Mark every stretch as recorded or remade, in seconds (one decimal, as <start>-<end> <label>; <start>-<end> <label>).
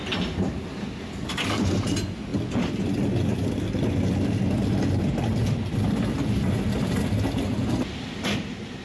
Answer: 0.0-8.8 recorded